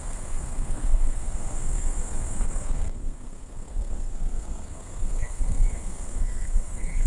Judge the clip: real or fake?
fake